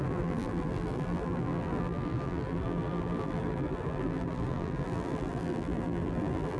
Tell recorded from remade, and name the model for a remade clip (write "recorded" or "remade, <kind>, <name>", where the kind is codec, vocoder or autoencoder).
remade, vocoder, BigVGAN v2